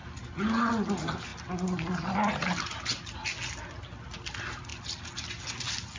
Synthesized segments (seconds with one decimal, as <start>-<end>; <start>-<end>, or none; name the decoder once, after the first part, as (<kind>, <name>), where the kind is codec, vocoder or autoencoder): none